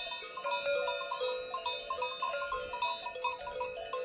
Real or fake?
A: real